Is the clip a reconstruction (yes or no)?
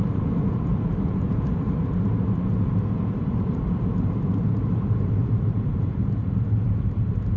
yes